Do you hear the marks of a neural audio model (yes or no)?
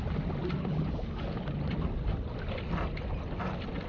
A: no